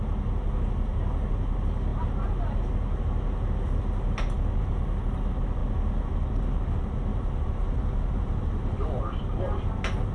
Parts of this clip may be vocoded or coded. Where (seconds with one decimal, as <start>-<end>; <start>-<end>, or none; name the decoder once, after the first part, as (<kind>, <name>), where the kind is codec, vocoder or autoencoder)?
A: 7.1-9.0 (vocoder, BigVGAN v2)